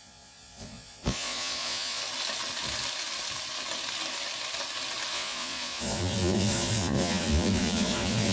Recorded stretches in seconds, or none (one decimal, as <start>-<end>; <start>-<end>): 2.0-5.1